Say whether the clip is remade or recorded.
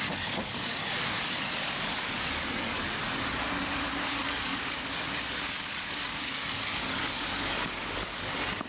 remade